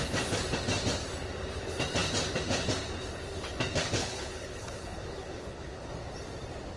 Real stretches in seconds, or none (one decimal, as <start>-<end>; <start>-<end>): 0.0-4.0; 5.9-6.8